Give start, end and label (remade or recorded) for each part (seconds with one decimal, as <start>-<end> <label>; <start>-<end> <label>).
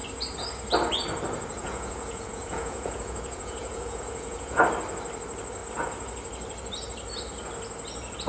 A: 0.0-1.6 recorded; 1.6-4.6 remade; 4.6-8.3 recorded